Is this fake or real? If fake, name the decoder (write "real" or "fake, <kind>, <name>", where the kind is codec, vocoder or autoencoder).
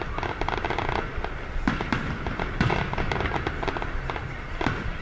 real